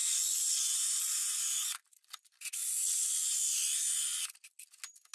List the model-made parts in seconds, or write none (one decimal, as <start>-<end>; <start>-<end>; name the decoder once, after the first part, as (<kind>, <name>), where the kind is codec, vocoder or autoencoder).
none